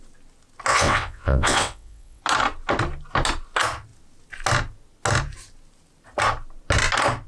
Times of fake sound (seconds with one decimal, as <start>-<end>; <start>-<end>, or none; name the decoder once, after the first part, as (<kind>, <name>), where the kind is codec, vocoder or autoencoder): 0.7-2.2 (vocoder, WaveNeXt)